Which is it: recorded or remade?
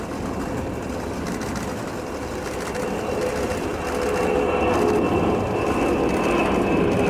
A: recorded